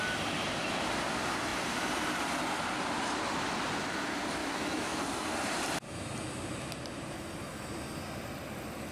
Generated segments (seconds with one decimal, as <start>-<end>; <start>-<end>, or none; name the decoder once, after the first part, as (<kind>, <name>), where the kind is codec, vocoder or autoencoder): 4.4-5.0 (autoencoder, DAC-VAE)

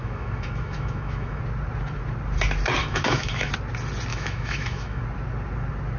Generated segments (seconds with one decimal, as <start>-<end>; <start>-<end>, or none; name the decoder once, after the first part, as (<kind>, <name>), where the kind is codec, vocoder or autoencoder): 0.0-1.4 (autoencoder, DAC-VAE); 2.8-3.5; 4.1-5.0

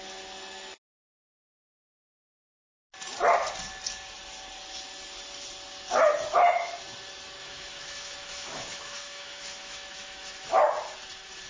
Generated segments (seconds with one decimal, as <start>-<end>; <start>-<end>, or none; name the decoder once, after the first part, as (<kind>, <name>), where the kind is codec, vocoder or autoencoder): 7.4-10.6 (autoencoder, DAC-VAE)

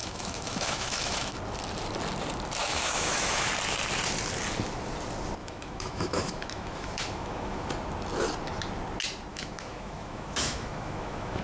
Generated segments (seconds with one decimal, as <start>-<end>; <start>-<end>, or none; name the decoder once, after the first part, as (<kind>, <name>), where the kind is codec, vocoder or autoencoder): 0.0-1.4 (autoencoder, DAC-VAE); 2.6-3.5; 5.4-7.7; 9.3-11.4

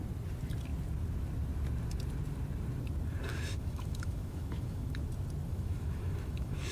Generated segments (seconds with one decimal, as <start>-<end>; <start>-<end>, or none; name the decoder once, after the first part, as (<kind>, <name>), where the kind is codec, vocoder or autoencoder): 3.3-5.0 (autoencoder, DAC-VAE); 5.4-6.7

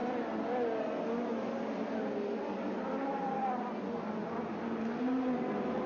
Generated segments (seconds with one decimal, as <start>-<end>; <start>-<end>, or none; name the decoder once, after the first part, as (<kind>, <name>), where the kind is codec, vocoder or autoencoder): none

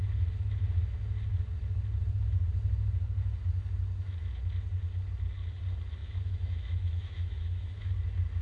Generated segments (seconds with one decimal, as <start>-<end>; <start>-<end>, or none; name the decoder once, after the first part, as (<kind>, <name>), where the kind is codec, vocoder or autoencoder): 6.0-7.9 (autoencoder, DAC-VAE)

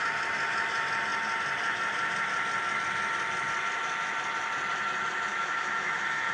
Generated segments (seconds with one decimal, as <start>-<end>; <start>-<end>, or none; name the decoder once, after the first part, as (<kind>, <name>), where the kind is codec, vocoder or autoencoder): 5.3-6.3 (autoencoder, DAC-VAE)